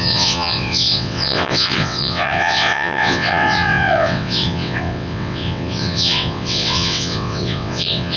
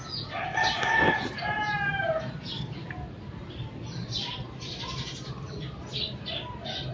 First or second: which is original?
second